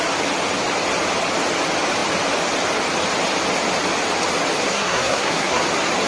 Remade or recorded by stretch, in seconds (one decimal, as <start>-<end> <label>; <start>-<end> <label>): 0.0-4.6 recorded; 4.6-5.6 remade; 5.6-6.1 recorded